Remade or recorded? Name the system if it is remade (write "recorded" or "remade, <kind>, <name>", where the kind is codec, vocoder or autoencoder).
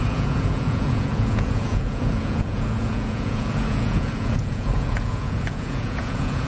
remade, vocoder, Vocos